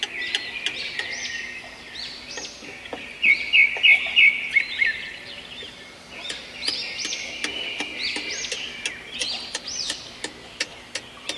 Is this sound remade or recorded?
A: recorded